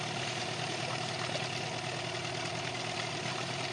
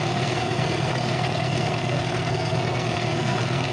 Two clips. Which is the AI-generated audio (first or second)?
second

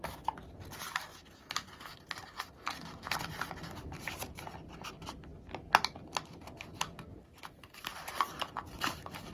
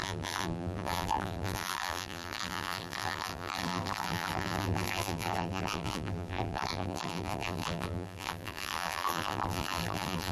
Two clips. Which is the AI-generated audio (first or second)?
second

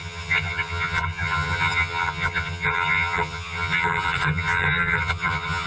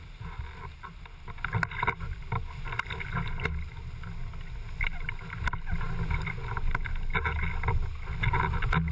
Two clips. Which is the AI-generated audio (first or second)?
first